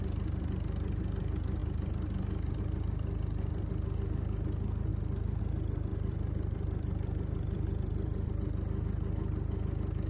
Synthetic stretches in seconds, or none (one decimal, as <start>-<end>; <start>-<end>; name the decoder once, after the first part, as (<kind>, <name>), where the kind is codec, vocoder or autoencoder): 5.9-8.3 (vocoder, BigVGAN v2)